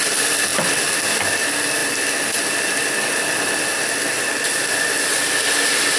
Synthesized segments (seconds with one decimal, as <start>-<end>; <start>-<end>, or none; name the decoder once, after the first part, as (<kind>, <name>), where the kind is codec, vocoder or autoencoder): none